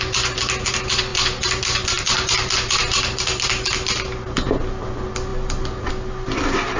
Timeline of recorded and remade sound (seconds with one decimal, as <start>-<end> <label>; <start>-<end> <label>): 0.0-6.8 recorded